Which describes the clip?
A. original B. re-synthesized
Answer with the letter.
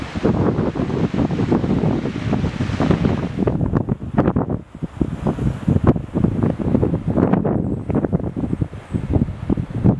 A